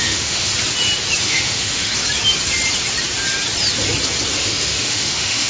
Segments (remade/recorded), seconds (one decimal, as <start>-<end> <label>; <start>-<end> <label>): 0.0-0.5 remade; 0.5-1.2 recorded; 1.2-1.9 remade; 1.9-4.4 recorded; 4.4-5.5 remade